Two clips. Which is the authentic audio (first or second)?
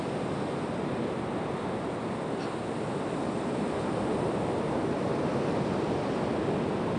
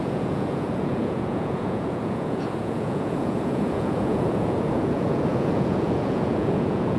first